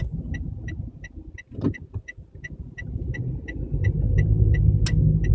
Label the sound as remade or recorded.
recorded